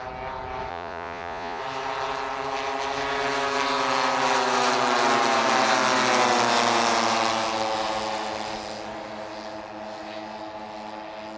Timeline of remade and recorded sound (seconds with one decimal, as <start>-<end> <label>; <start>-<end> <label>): 0.0-0.7 recorded; 0.7-1.6 remade; 1.6-11.4 recorded